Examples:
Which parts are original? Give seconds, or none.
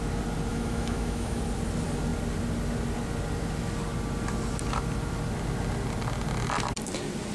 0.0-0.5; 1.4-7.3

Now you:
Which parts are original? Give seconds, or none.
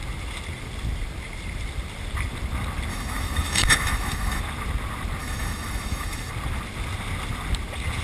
0.0-2.9; 4.4-5.2; 6.3-8.0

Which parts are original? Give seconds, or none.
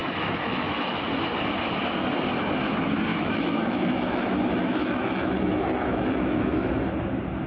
1.0-3.1; 6.9-7.5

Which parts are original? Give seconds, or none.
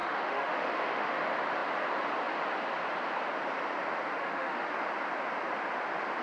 1.2-4.2; 4.7-6.2